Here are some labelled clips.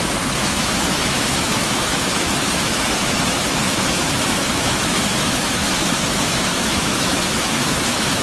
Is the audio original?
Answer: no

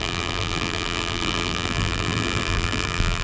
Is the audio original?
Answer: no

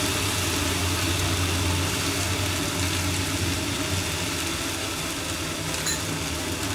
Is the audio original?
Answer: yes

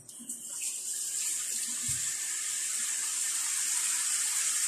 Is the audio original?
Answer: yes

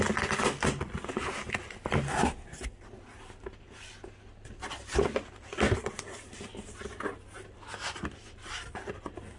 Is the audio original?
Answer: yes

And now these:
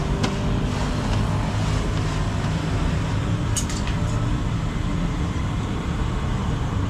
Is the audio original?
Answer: yes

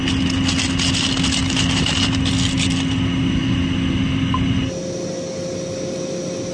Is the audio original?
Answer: yes